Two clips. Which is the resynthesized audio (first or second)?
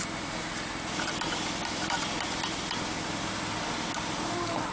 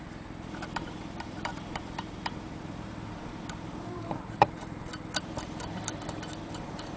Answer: second